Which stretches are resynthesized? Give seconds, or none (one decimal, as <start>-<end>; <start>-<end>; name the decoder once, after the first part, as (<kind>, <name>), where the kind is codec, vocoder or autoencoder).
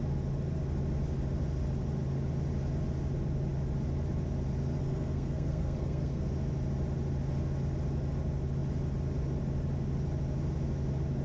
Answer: 4.8-6.3 (codec, SNAC)